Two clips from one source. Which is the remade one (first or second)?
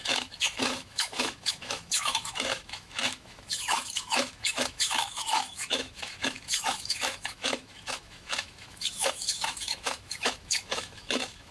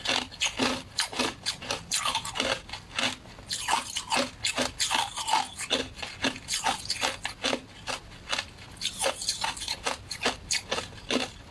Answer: first